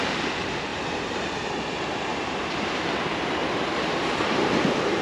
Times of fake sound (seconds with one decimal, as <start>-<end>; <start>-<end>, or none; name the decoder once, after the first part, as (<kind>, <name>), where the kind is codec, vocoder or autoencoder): 0.7-1.4 (vocoder, BigVGAN v2); 2.1-2.8; 3.4-5.0